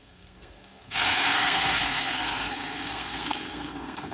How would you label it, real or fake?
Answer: fake